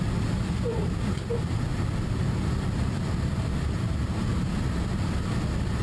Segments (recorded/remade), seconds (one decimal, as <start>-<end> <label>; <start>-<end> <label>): 0.0-0.8 recorded; 0.8-4.3 remade; 4.3-5.8 recorded